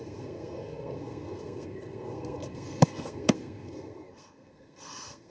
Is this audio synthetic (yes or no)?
yes